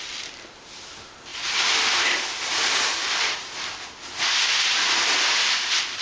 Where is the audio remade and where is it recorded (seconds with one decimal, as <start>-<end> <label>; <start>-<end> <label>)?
0.0-1.3 recorded; 1.3-3.5 remade; 3.5-6.0 recorded